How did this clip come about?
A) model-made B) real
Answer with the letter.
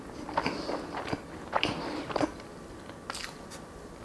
A